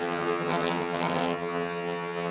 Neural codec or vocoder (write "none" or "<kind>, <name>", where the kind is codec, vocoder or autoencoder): vocoder, HiFi-GAN